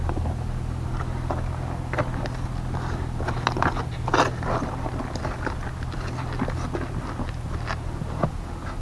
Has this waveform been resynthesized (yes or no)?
no